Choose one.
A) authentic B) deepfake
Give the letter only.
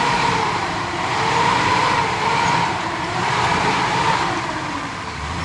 B